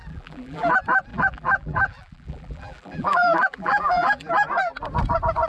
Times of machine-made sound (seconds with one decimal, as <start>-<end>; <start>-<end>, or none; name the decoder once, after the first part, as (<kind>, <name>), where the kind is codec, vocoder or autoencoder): 0.0-0.7 (vocoder, BigVGAN v2); 1.1-4.3